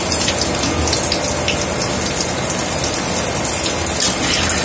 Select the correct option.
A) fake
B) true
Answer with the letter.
B